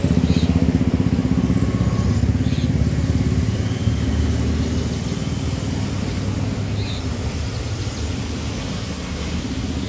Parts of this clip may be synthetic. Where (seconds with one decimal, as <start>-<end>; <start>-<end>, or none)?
8.6-9.4